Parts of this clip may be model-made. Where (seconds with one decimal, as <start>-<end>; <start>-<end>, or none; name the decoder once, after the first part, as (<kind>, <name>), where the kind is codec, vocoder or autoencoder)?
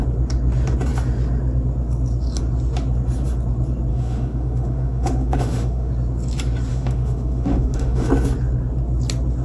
3.9-5.9 (autoencoder, DAC-VAE); 6.7-8.1